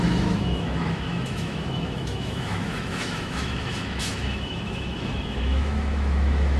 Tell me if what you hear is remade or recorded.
remade